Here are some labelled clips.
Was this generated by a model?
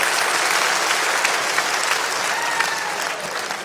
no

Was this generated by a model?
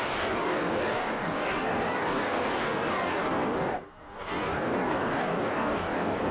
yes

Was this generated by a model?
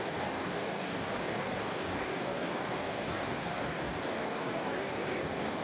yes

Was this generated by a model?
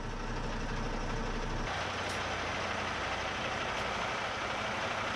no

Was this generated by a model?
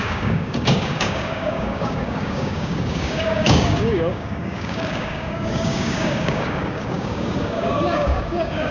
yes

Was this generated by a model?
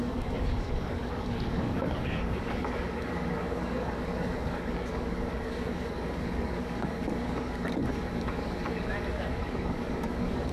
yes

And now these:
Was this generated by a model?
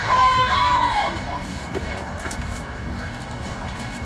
yes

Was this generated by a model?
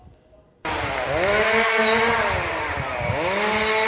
no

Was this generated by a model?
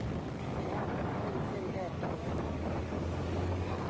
yes